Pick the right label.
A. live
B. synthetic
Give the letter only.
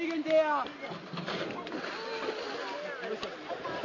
A